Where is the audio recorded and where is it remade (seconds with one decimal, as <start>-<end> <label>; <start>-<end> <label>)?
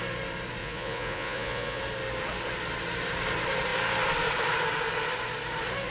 0.0-0.6 recorded; 0.6-1.8 remade; 1.8-5.9 recorded